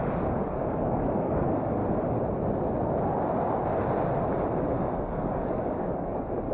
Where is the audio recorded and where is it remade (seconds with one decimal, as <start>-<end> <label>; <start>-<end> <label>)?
0.0-1.8 remade; 1.8-4.8 recorded; 4.8-6.5 remade